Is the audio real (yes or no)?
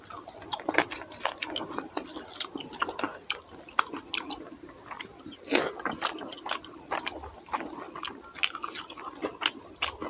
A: yes